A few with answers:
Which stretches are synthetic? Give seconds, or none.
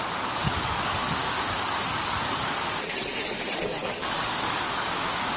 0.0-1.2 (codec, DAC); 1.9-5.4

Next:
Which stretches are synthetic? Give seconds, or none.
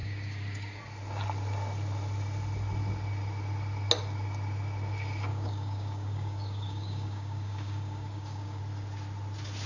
0.0-0.8 (codec, DAC); 5.3-8.6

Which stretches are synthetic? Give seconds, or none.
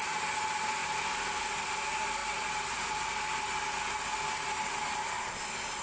none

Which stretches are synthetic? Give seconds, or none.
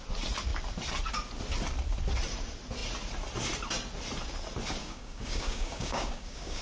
4.8-6.6 (codec, DAC)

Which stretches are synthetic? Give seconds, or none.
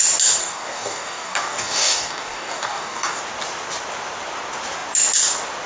0.4-3.2 (codec, DAC)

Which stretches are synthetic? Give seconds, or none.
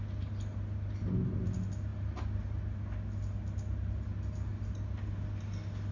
none